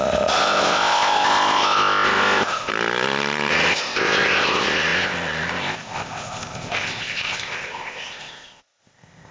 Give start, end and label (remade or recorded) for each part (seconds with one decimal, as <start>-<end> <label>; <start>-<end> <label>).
0.0-2.7 remade; 2.7-3.5 recorded; 3.5-9.3 remade